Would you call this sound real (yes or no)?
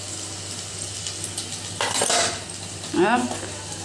yes